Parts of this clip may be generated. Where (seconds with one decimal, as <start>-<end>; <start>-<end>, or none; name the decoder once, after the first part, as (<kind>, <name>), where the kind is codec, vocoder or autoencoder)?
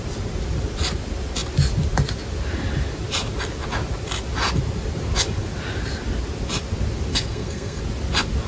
7.1-7.8 (codec, SNAC)